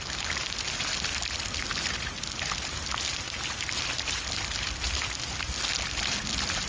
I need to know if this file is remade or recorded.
recorded